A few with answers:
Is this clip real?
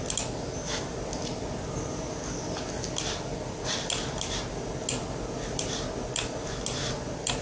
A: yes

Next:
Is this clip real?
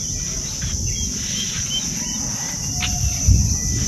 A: yes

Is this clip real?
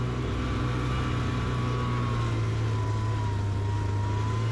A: yes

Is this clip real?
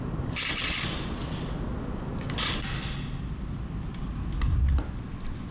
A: yes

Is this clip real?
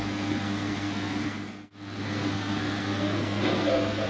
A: no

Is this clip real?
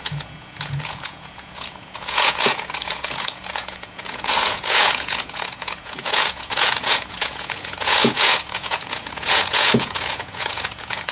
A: no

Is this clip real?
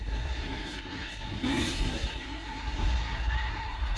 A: no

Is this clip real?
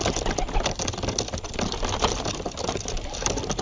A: yes